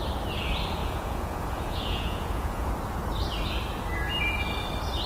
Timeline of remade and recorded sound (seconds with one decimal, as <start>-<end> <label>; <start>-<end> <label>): 0.0-0.8 recorded; 0.8-2.7 remade; 2.7-5.1 recorded